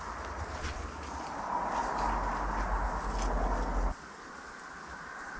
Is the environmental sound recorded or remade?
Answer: recorded